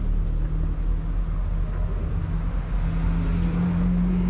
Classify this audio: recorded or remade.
recorded